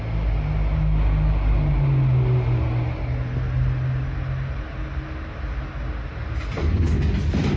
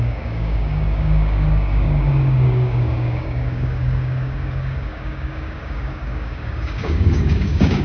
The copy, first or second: second